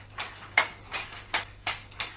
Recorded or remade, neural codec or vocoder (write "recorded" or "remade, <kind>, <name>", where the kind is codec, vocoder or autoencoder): remade, codec, DAC